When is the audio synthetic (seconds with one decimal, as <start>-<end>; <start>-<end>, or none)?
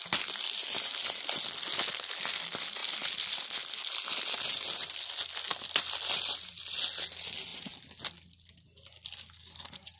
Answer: none